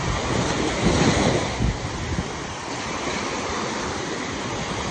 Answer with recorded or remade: recorded